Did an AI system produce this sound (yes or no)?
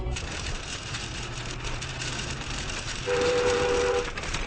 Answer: yes